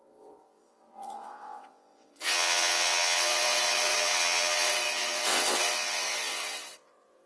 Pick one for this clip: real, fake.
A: fake